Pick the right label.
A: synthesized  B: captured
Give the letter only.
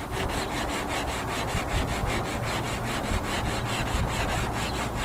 B